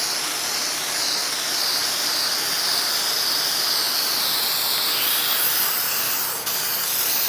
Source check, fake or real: real